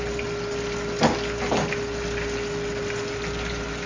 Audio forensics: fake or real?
real